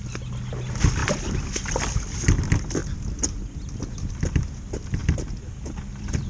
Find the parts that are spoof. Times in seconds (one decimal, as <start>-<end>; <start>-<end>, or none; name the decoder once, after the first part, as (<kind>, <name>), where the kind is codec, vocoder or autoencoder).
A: none